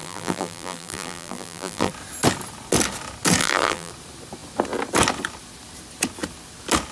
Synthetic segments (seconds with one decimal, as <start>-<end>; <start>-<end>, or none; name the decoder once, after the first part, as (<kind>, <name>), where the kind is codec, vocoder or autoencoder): 0.0-1.9 (vocoder, BigVGAN v2); 3.4-3.9